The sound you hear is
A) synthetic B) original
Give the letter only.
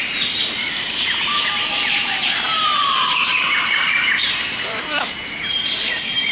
A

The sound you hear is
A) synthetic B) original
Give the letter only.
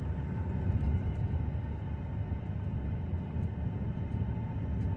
B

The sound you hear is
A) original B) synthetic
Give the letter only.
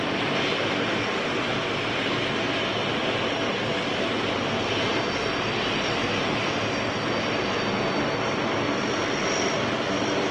A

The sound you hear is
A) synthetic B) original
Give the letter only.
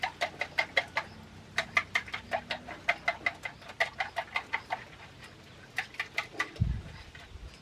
B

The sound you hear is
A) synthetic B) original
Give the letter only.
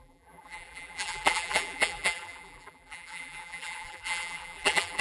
A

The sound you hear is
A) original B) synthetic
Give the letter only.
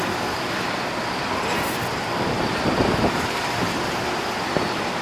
B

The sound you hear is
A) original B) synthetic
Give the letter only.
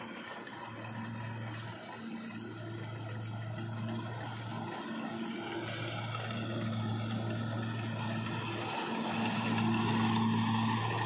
A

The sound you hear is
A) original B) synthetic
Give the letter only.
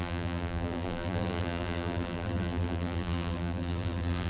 B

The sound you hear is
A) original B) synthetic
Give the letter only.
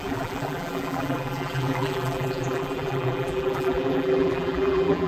B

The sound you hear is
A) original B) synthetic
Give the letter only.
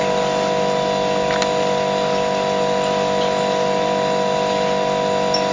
A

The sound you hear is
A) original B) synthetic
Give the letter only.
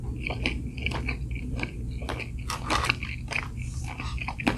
A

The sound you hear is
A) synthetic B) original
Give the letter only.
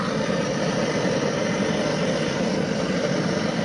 A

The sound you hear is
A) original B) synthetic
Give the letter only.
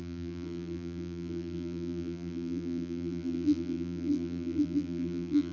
B